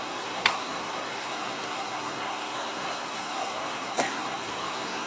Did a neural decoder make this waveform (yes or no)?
yes